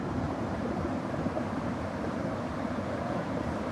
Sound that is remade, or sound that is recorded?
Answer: remade